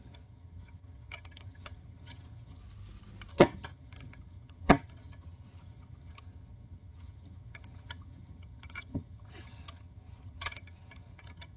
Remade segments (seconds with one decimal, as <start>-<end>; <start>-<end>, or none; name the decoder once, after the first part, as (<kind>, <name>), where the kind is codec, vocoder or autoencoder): 0.0-2.6 (vocoder, HiFi-GAN); 3.3-11.6

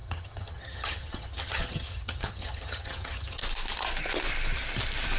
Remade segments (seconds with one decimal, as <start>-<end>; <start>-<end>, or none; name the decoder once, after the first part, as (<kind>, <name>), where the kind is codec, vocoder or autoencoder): 0.0-3.4 (vocoder, HiFi-GAN)

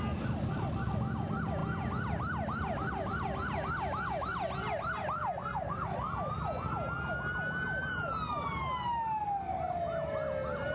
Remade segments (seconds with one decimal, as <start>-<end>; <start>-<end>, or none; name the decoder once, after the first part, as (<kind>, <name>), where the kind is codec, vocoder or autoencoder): none

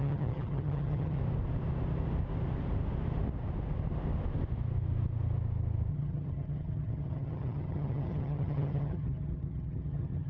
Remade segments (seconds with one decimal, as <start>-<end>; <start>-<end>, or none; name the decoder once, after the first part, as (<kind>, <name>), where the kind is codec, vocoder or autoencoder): 0.0-1.2 (vocoder, HiFi-GAN); 5.9-10.3